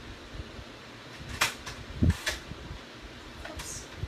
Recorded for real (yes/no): no